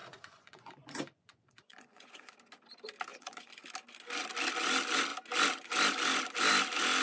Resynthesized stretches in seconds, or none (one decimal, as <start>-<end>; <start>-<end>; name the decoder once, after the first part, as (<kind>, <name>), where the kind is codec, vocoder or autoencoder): 0.0-2.3 (vocoder, Vocos); 3.1-3.6